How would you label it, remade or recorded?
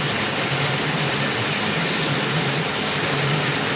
recorded